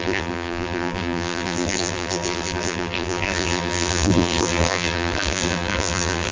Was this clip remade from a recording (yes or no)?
yes